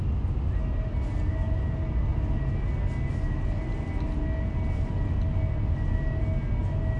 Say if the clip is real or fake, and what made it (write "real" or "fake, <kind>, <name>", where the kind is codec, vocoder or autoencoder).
real